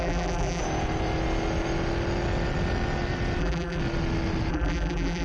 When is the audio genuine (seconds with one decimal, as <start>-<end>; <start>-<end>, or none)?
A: 0.6-3.4; 3.8-4.5